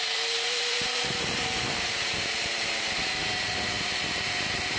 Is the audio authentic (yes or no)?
no